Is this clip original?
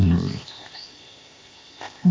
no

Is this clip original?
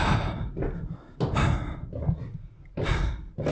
yes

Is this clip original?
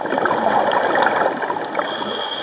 yes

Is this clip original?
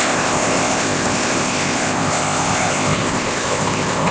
no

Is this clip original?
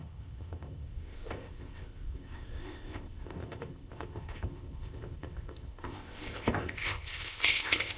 no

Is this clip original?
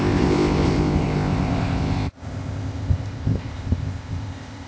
no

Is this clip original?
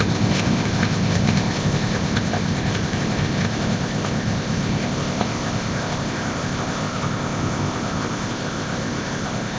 no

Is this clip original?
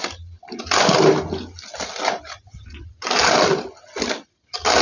yes